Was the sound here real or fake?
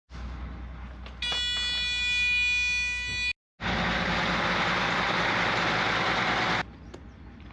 real